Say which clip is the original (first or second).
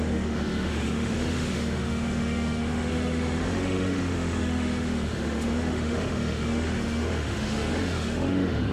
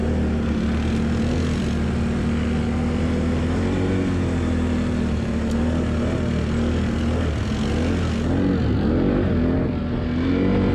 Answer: second